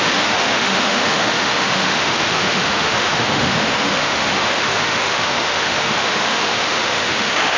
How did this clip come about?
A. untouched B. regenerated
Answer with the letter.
B